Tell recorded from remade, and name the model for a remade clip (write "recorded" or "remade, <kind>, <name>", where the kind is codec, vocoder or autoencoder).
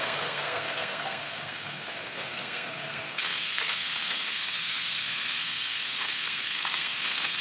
remade, codec, SNAC